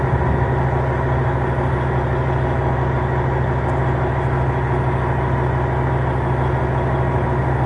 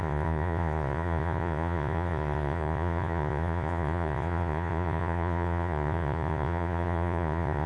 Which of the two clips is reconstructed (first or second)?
second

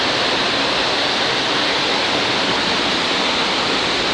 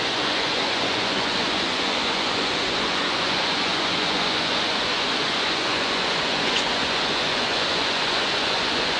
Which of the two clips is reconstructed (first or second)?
second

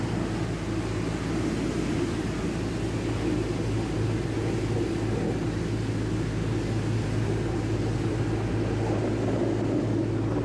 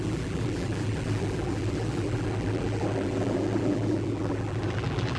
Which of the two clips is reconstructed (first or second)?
second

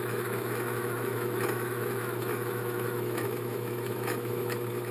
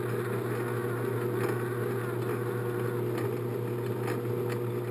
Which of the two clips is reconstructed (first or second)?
first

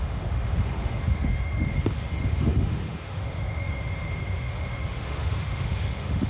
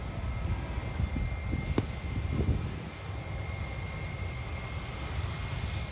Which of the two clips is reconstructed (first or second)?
first